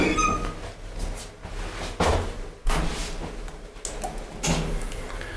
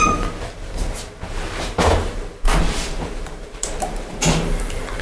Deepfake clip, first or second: second